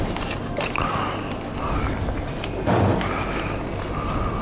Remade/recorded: recorded